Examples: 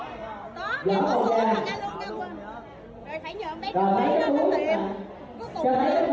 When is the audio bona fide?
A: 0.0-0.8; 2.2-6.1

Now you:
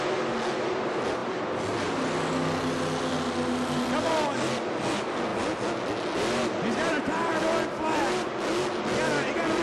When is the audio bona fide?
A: 0.0-9.6

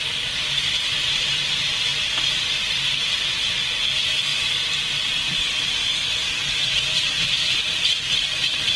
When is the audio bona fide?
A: 1.9-3.6; 5.8-6.7

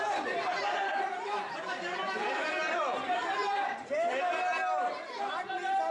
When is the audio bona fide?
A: 0.0-0.8; 2.8-5.9

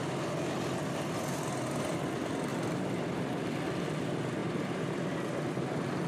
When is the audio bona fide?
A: 0.0-2.5; 3.4-4.4

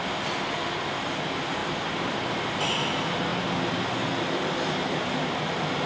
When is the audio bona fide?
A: 0.0-4.8; 5.4-5.9

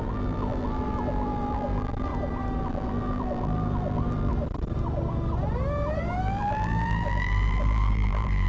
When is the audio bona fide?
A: 2.1-2.6; 4.3-6.2